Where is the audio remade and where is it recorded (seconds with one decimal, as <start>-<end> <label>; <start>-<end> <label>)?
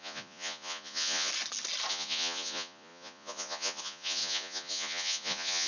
0.0-1.3 remade; 1.3-1.9 recorded; 1.9-5.7 remade